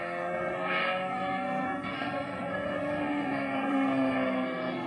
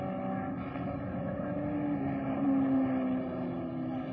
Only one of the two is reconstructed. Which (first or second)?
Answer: first